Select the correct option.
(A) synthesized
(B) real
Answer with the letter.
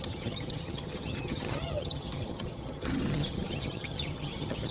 A